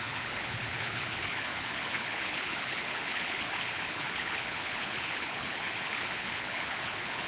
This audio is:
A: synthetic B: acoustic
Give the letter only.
A